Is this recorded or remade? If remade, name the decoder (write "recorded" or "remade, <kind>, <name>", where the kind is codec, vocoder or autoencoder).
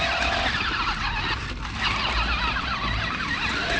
recorded